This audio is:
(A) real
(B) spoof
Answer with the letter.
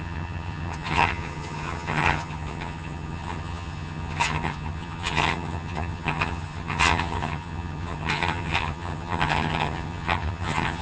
B